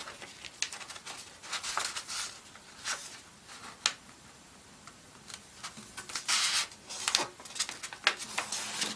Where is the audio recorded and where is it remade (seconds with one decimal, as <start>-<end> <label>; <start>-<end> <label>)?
0.0-9.0 recorded